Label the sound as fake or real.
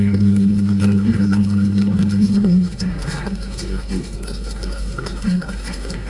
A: fake